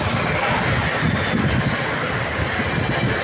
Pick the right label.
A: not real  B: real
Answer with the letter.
B